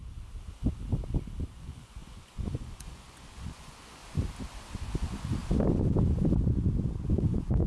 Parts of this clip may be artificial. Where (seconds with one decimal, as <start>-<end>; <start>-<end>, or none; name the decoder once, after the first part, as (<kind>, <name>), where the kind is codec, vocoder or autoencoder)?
1.5-4.0 (vocoder, Vocos); 4.8-5.4; 7.1-7.7